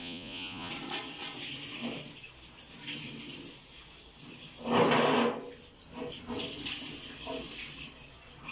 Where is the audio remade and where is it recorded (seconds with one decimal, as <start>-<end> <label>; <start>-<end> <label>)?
0.0-0.7 remade; 0.7-8.5 recorded